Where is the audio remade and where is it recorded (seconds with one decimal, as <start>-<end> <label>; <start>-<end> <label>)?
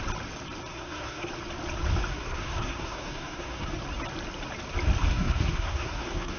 0.0-0.7 recorded; 0.7-1.3 remade; 1.3-2.1 recorded; 2.1-3.7 remade; 3.7-5.1 recorded; 5.1-6.4 remade